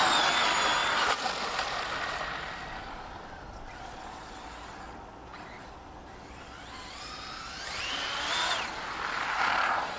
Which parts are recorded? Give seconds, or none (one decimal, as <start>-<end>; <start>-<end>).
0.0-0.8; 2.2-5.3; 7.8-10.0